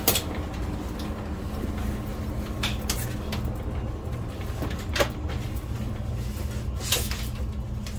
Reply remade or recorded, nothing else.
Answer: recorded